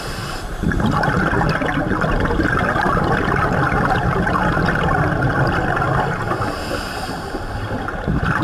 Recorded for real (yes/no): yes